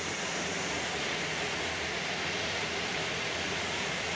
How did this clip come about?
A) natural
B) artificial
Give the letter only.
B